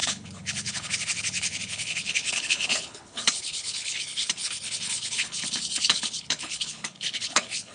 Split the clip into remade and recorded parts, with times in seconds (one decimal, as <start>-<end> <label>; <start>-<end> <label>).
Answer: 0.0-7.7 remade